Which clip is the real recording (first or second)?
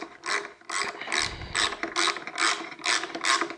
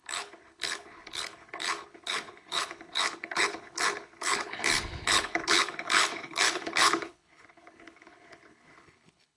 first